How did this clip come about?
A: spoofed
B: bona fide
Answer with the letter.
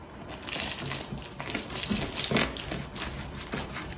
B